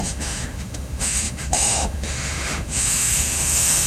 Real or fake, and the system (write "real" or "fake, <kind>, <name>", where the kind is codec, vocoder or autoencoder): fake, autoencoder, DAC-VAE